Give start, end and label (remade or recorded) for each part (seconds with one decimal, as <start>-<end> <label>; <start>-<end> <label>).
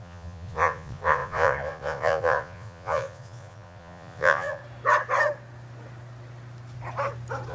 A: 0.0-4.6 remade; 4.6-7.5 recorded